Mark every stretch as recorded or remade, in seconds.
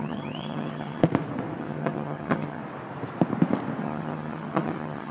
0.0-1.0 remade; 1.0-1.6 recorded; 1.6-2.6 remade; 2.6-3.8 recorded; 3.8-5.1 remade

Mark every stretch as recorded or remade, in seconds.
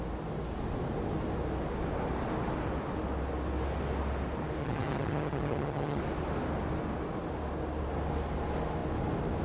0.0-4.6 recorded; 4.6-6.0 remade; 6.0-9.4 recorded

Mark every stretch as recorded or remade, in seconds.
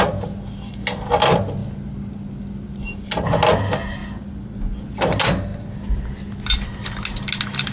0.0-7.7 recorded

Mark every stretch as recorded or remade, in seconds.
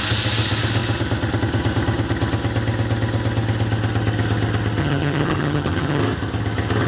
0.0-4.8 recorded; 4.8-6.0 remade; 6.0-6.9 recorded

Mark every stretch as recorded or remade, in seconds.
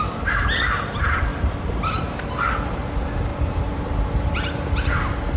0.0-5.4 recorded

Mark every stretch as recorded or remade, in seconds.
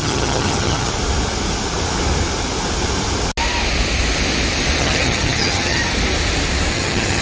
0.0-0.9 remade; 0.9-4.8 recorded; 4.8-5.8 remade; 5.8-6.7 recorded; 6.7-7.2 remade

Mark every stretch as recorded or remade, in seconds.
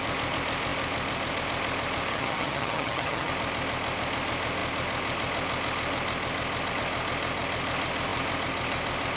0.0-2.1 recorded; 2.1-3.3 remade; 3.3-9.2 recorded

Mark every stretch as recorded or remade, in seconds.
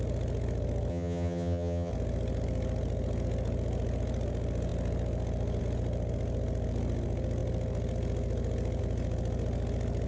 0.0-0.9 recorded; 0.9-1.9 remade; 1.9-10.1 recorded